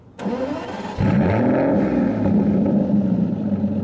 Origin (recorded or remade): recorded